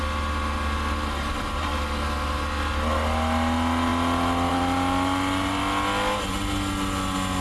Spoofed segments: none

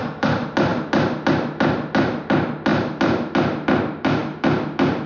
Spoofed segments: none

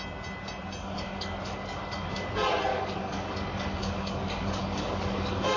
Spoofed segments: 0.8-2.3 (codec, DAC); 2.7-5.6

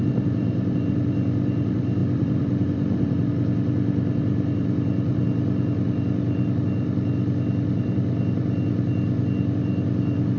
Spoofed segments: 2.0-3.3 (vocoder, BigVGAN v2)

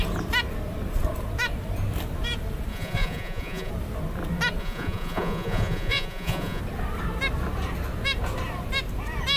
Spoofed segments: 2.7-3.7 (vocoder, Vocos); 4.6-6.6

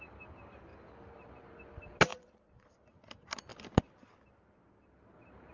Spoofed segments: 2.1-2.7 (vocoder, Vocos)